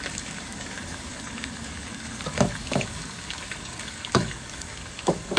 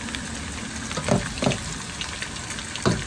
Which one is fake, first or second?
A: first